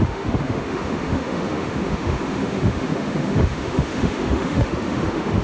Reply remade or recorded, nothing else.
remade